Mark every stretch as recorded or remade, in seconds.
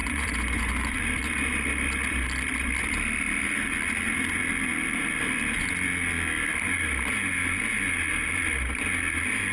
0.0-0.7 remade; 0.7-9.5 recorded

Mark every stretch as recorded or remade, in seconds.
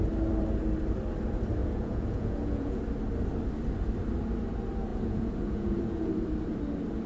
0.0-1.6 recorded; 1.6-2.8 remade; 2.8-4.9 recorded; 4.9-6.1 remade; 6.1-7.1 recorded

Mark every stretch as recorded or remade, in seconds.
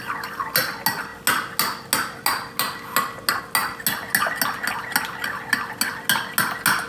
0.0-6.9 recorded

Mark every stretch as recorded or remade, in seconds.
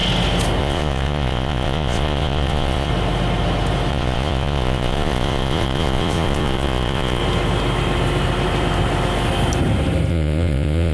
0.0-0.6 recorded; 0.6-2.9 remade; 2.9-3.9 recorded; 3.9-7.2 remade; 7.2-10.1 recorded; 10.1-10.9 remade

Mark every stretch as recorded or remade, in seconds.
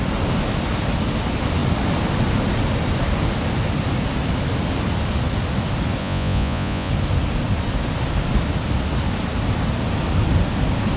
0.0-6.0 recorded; 6.0-6.9 remade; 6.9-11.0 recorded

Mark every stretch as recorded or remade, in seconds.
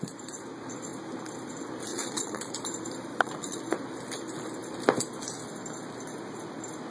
0.0-1.9 recorded; 1.9-2.5 remade; 2.5-3.1 recorded; 3.1-3.6 remade; 3.6-6.9 recorded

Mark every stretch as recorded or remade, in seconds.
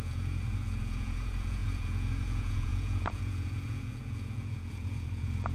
0.0-5.5 remade